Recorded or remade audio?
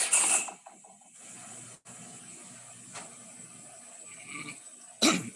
recorded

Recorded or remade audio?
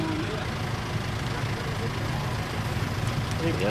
recorded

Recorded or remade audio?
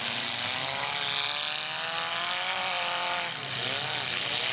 recorded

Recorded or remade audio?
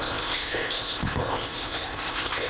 remade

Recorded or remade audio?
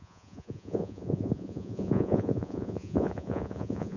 remade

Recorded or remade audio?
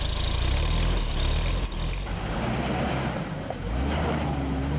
recorded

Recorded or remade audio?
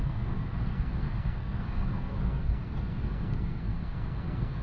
remade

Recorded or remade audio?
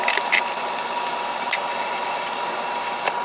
recorded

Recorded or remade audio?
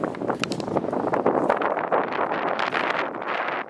recorded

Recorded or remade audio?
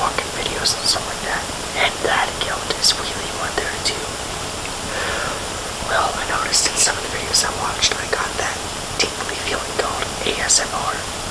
recorded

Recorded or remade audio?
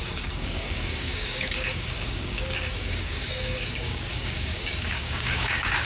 remade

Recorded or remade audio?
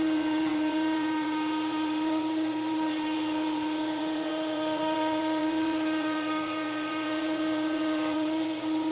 remade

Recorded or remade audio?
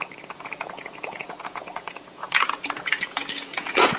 remade